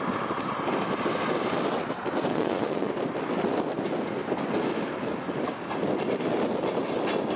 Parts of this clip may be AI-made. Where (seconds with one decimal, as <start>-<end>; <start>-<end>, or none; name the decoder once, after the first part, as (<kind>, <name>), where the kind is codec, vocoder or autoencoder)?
2.3-2.9 (vocoder, Vocos)